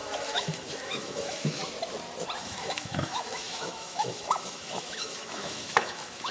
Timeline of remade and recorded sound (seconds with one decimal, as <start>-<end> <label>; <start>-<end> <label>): 0.0-1.6 remade; 1.6-2.4 recorded; 2.4-6.3 remade